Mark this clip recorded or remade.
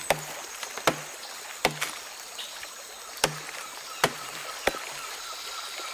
recorded